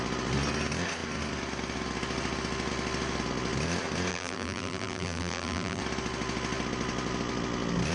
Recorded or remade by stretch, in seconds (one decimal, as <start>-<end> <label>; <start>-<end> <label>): 0.0-4.1 recorded; 4.1-5.8 remade; 5.8-7.9 recorded